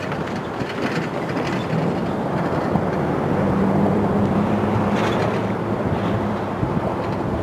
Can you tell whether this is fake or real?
fake